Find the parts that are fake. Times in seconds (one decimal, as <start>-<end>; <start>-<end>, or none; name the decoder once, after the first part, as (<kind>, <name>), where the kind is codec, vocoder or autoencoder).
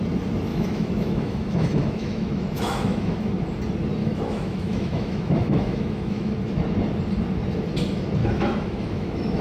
0.5-3.2 (autoencoder, DAC-VAE); 4.0-6.3; 8.2-9.4